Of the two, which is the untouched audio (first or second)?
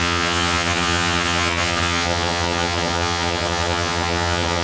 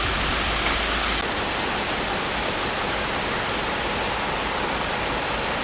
second